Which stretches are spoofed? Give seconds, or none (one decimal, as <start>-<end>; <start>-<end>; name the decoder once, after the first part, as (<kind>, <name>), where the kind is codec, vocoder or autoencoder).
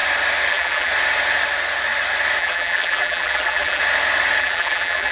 0.5-0.9 (vocoder, BigVGAN v2); 2.4-3.8; 4.4-5.1